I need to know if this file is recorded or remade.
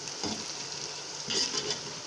recorded